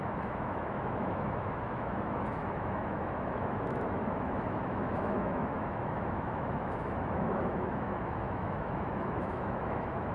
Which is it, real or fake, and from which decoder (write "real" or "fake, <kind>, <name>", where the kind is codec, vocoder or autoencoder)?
fake, autoencoder, DAC-VAE